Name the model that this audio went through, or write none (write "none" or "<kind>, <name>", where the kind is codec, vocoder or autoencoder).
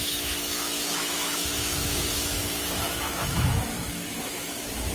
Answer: autoencoder, DAC-VAE